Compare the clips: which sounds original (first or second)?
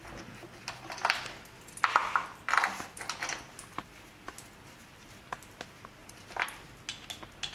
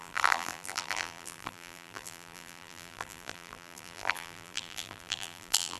first